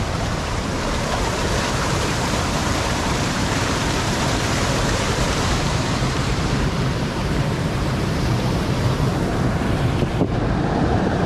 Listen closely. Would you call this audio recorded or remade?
remade